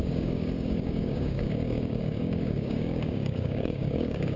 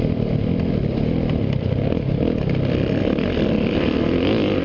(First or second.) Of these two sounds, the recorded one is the second